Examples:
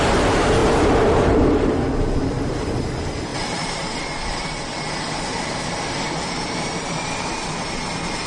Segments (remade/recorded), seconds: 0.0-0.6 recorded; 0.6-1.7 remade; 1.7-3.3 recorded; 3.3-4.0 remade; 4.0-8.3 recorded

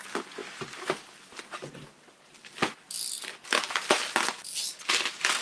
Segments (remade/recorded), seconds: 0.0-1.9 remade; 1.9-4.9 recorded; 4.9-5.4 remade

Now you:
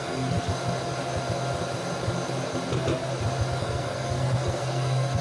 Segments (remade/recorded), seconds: 0.0-0.5 remade; 0.5-3.6 recorded; 3.6-5.2 remade

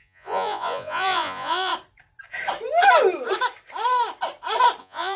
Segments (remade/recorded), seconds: 0.0-1.7 remade; 1.7-4.8 recorded; 4.8-5.2 remade

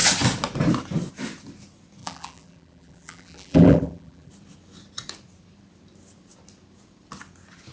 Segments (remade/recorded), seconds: 0.0-2.0 recorded; 2.0-4.3 remade; 4.3-7.7 recorded

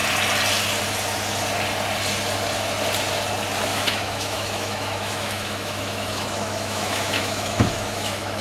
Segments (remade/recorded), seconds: 0.0-3.7 recorded; 3.7-8.4 remade

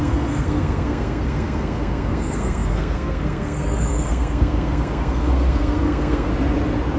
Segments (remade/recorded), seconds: 0.0-6.3 remade; 6.3-7.0 recorded

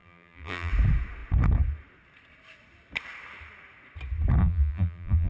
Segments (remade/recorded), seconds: 0.0-0.7 remade; 0.7-4.4 recorded; 4.4-5.3 remade